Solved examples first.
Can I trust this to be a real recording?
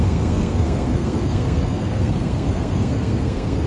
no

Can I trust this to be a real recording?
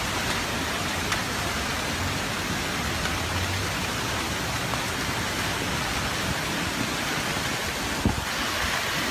yes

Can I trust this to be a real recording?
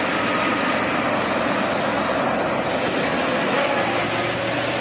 yes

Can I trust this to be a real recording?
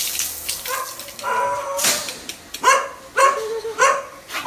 yes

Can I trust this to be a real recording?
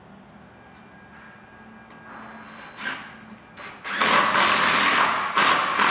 yes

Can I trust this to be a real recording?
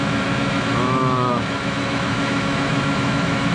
no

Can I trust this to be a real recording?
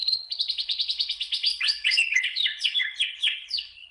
no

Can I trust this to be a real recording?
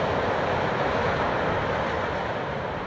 yes